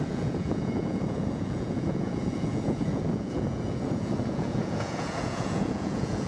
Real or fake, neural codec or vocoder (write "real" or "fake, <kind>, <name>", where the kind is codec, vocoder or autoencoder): fake, vocoder, Vocos